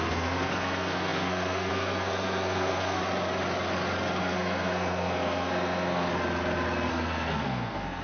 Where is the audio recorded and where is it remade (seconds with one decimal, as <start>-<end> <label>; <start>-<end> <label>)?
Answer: 0.0-3.0 remade; 3.0-4.2 recorded; 4.2-6.1 remade; 6.1-6.9 recorded; 6.9-8.0 remade